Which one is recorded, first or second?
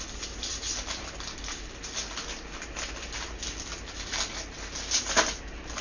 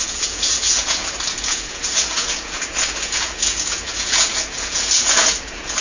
first